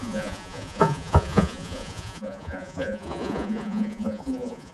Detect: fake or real fake